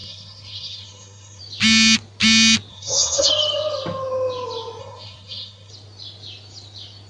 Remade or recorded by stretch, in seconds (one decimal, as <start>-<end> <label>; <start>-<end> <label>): 0.0-1.4 remade; 1.4-2.7 recorded; 2.7-3.3 remade; 3.3-4.8 recorded; 4.8-5.7 remade; 5.7-7.1 recorded